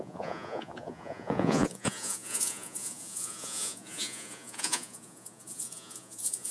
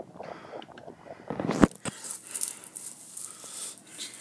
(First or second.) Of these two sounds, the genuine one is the second